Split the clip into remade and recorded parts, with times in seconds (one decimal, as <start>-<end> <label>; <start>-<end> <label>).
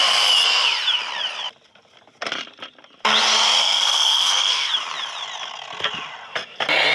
0.0-3.6 recorded; 3.6-4.7 remade; 4.7-6.9 recorded